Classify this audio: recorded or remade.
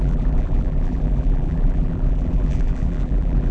remade